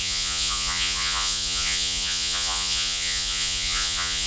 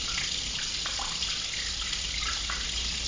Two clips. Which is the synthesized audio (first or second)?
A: first